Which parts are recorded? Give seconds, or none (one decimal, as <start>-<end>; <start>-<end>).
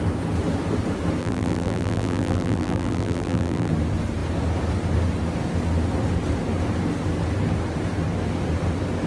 0.0-1.2; 3.7-9.1